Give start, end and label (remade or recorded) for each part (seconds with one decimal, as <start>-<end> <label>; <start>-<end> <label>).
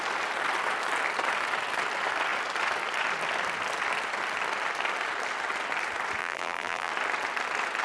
0.0-6.2 recorded; 6.2-6.9 remade; 6.9-7.8 recorded